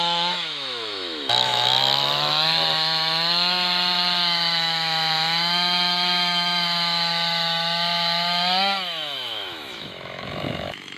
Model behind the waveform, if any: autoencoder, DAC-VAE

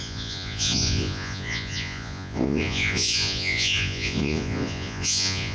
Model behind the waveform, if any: vocoder, Vocos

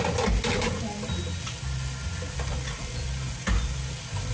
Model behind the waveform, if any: none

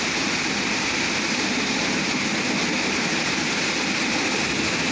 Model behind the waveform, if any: none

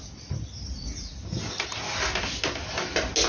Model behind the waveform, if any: none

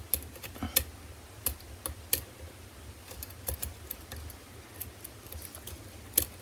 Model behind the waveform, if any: none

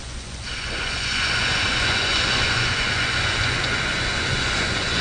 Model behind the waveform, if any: vocoder, Vocos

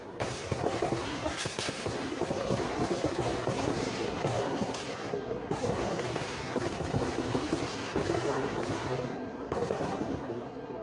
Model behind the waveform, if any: codec, SNAC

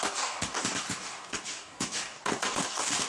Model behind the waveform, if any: codec, DAC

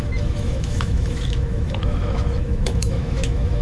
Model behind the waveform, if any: autoencoder, DAC-VAE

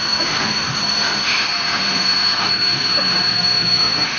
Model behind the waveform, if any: autoencoder, DAC-VAE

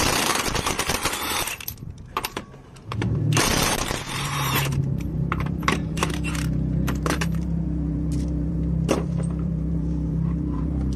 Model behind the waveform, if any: vocoder, BigVGAN v2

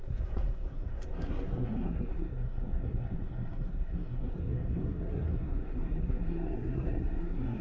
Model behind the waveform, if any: codec, SNAC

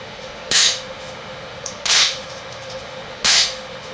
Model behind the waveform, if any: autoencoder, DAC-VAE